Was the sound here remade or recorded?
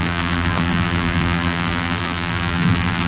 remade